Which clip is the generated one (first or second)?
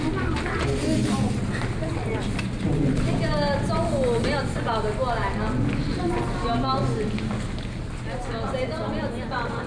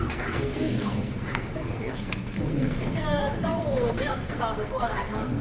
second